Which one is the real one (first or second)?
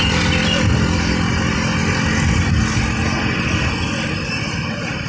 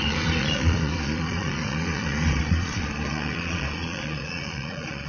first